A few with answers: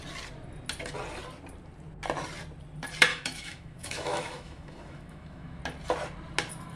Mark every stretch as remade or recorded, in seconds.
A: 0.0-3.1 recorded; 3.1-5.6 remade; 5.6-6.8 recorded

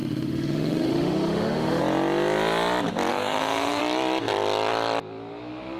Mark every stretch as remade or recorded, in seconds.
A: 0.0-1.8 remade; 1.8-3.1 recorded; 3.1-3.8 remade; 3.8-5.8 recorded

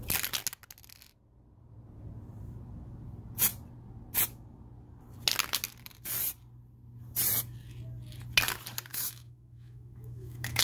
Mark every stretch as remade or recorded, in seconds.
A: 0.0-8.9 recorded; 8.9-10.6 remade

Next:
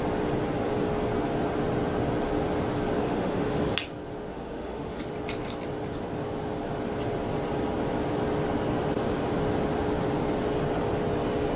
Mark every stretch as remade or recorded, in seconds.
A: 0.0-3.0 recorded; 3.0-3.6 remade; 3.6-4.3 recorded; 4.3-5.0 remade; 5.0-11.6 recorded

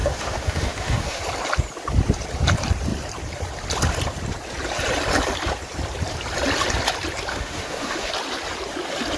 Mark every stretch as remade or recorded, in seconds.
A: 0.0-1.2 remade; 1.2-7.3 recorded; 7.3-8.1 remade; 8.1-9.2 recorded

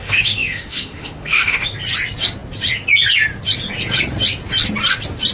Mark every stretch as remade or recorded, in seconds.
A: 0.0-1.7 remade; 1.7-5.3 recorded